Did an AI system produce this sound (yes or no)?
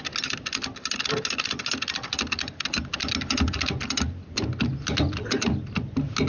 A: no